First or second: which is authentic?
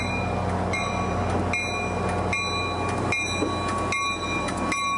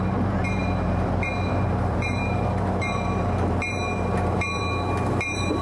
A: first